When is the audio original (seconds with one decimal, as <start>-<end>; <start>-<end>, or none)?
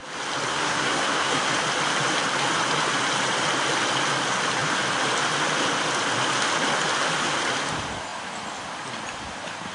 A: 0.0-0.5; 1.5-9.7